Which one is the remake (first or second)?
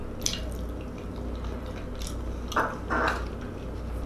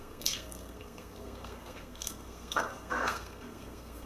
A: second